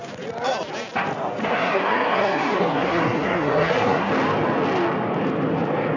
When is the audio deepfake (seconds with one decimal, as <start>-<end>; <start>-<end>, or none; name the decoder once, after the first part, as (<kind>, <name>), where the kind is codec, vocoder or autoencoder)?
1.4-4.1 (codec, SNAC)